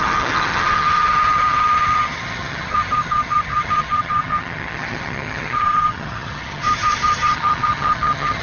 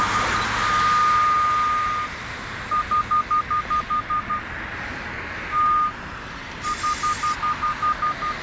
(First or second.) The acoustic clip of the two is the second